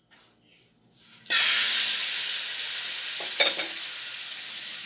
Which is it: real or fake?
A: real